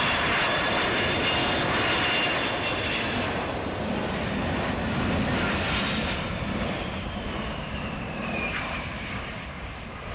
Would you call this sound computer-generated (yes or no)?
no